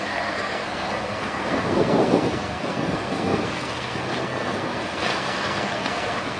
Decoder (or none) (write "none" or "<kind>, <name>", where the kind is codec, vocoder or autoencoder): codec, SNAC